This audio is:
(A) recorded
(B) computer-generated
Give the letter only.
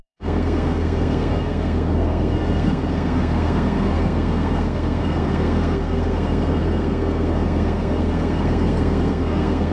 B